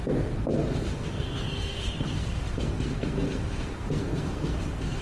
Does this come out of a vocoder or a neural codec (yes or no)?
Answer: yes